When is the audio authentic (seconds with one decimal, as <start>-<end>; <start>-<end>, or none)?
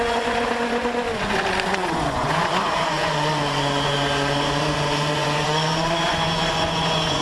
none